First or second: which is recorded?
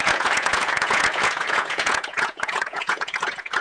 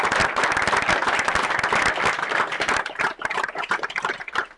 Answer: second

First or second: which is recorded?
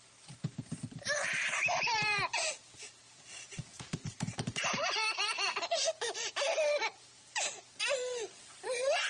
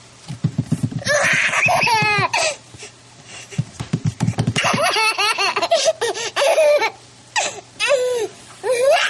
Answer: second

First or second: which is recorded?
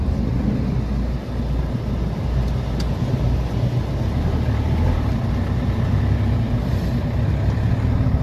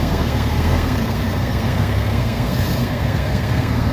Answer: first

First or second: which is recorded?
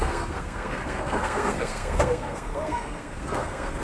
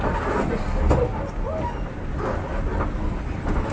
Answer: second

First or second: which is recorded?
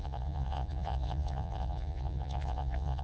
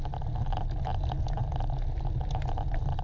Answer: second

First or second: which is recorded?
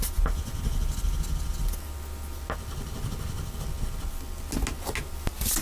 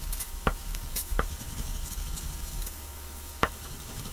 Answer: first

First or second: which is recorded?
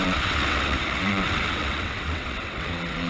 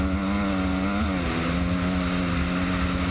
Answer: second